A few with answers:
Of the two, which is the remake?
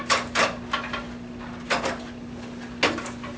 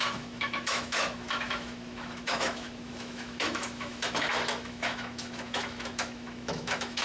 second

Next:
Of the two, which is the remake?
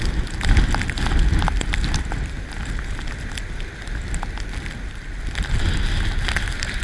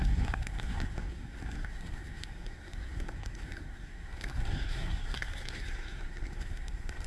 second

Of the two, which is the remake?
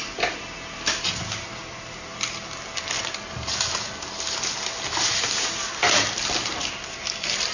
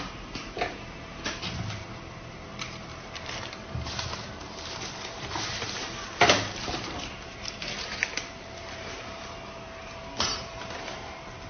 second